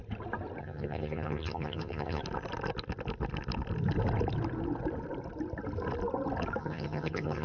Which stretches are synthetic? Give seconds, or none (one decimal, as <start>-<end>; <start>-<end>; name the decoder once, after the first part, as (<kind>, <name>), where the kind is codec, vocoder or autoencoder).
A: 0.6-2.2 (vocoder, HiFi-GAN); 6.6-7.4